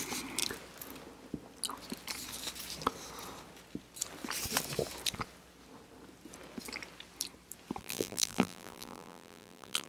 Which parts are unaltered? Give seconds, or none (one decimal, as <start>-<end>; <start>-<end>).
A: 0.0-7.8